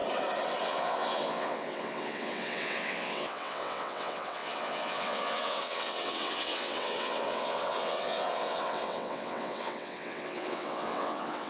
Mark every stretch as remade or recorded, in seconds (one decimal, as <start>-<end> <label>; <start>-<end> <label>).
0.0-0.6 recorded; 0.6-11.5 remade